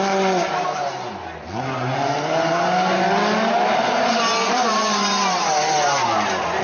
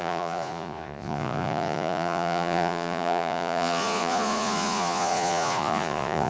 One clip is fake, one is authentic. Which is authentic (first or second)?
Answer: first